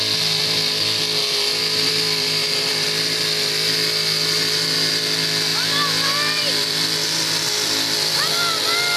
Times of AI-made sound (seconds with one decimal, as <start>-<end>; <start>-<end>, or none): 1.6-2.7; 5.5-8.3